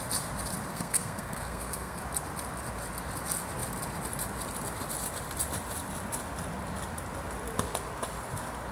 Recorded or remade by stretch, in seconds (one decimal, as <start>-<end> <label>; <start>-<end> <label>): 0.0-0.7 recorded; 0.7-2.0 remade; 2.0-8.7 recorded

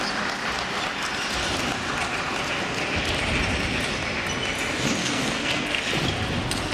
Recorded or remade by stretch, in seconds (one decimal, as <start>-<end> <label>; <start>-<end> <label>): 0.0-5.0 recorded; 5.0-5.8 remade; 5.8-6.7 recorded

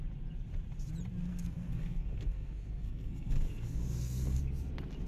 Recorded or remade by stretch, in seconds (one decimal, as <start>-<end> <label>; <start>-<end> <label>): 0.0-1.3 recorded; 1.3-4.4 remade; 4.4-5.1 recorded

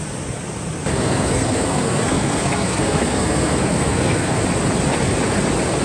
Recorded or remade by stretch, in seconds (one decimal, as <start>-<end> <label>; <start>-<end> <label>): 0.0-0.9 recorded; 0.9-4.4 remade; 4.4-5.8 recorded

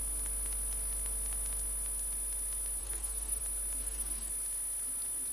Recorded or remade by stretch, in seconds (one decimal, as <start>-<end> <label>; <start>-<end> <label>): 0.0-2.8 recorded; 2.8-3.4 remade; 3.4-3.8 recorded; 3.8-4.3 remade; 4.3-5.3 recorded

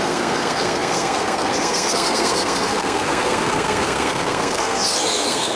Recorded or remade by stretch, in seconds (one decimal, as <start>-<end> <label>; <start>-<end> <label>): 0.0-5.6 remade